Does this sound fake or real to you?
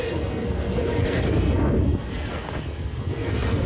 fake